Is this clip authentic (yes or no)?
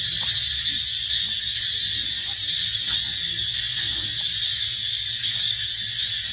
yes